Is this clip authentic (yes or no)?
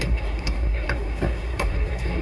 no